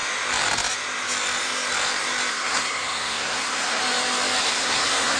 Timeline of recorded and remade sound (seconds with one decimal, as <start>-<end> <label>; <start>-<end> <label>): 0.0-2.3 recorded; 2.3-3.8 remade; 3.8-4.4 recorded; 4.4-5.2 remade